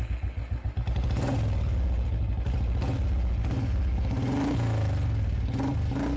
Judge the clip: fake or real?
real